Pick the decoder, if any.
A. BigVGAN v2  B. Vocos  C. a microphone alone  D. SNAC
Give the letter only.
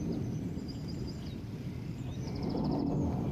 C